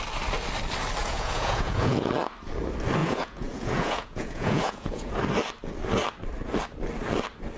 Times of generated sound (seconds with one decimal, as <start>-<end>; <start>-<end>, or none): 1.0-2.1; 3.0-5.1